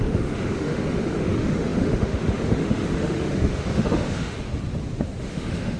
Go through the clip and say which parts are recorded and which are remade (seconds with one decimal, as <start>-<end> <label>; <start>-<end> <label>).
0.0-4.5 remade; 4.5-5.2 recorded; 5.2-5.8 remade